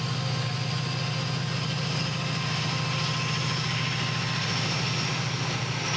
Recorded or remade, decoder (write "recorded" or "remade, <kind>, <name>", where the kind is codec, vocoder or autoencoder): recorded